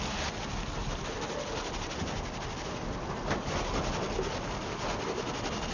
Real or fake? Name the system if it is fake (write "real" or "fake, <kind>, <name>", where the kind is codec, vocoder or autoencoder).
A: real